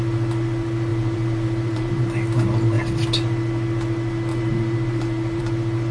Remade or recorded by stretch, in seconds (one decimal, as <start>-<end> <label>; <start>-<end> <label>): 0.0-0.9 recorded; 0.9-1.9 remade; 1.9-4.3 recorded; 4.3-5.4 remade; 5.4-5.9 recorded